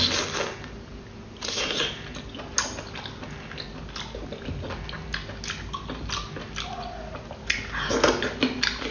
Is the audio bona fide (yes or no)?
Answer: yes